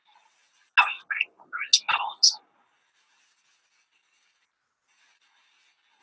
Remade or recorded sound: recorded